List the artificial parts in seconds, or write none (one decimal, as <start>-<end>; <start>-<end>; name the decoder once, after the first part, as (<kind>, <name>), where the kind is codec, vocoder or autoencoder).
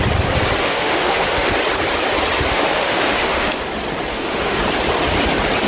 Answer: 0.6-1.5 (autoencoder, DAC-VAE); 2.5-3.6; 4.1-4.6